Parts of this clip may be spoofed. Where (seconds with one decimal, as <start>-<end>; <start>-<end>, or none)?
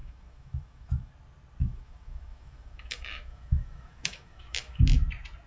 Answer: 0.0-1.1; 1.6-4.8